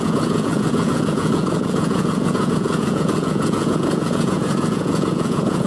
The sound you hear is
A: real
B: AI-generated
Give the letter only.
B